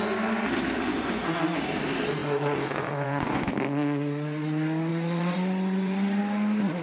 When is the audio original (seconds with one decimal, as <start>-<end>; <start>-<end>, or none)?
0.0-0.9; 1.4-2.2; 3.5-4.9; 6.2-6.8